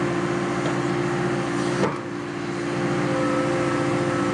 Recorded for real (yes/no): yes